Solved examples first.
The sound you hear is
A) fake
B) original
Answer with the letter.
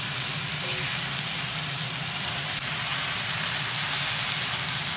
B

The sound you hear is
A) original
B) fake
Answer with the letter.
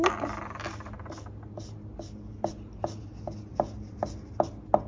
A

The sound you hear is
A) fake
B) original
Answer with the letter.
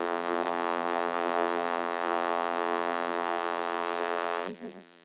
A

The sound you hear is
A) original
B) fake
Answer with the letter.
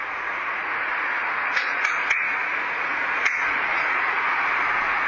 B